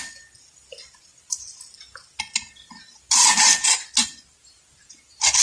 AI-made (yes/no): no